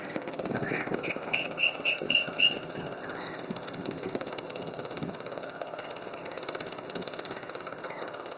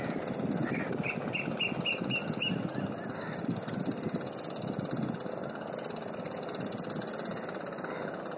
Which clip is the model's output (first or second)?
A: first